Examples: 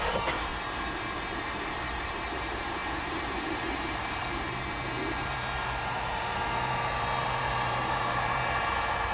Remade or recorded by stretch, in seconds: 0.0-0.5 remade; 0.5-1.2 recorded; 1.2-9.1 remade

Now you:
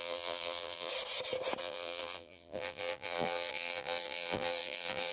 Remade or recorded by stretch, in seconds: 0.0-0.9 remade; 0.9-1.6 recorded; 1.6-5.1 remade

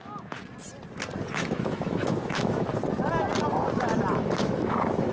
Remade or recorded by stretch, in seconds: 0.0-0.4 remade; 0.4-1.3 recorded; 1.3-2.7 remade; 2.7-4.1 recorded; 4.1-5.1 remade

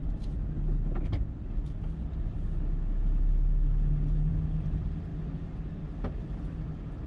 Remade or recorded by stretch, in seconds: 0.0-7.1 recorded

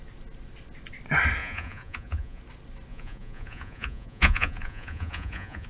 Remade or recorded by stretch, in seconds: 0.0-1.4 recorded; 1.4-2.4 remade; 2.4-2.9 recorded; 2.9-5.7 remade

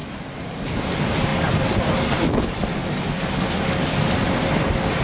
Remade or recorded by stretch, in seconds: 0.0-5.0 recorded